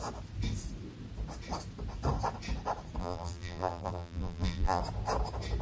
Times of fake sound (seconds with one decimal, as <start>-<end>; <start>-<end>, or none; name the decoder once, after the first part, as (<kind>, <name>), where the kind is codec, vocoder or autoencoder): 3.0-4.8 (vocoder, BigVGAN v2)